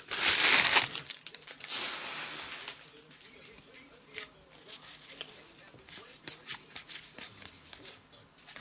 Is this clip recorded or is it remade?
recorded